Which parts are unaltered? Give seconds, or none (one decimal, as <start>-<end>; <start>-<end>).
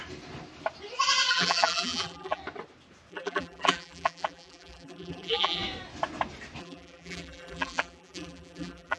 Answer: 0.0-1.3; 2.4-3.1; 5.6-6.6